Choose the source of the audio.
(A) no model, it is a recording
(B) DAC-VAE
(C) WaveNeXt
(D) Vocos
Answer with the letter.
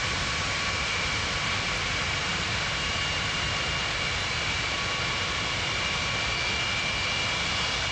A